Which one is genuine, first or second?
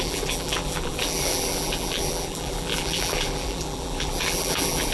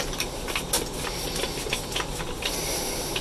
second